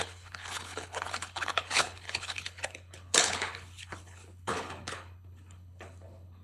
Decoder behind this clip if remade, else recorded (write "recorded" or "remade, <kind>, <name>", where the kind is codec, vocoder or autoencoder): remade, codec, HILCodec